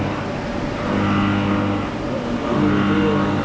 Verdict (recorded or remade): recorded